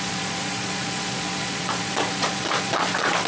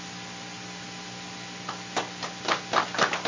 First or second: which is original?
second